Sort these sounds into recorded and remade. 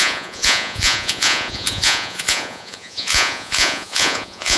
remade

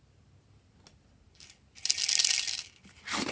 recorded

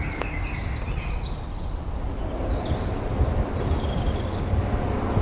recorded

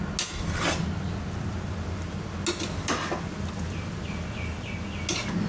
recorded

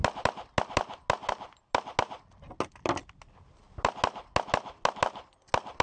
recorded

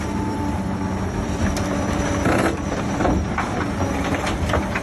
remade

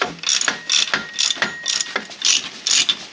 recorded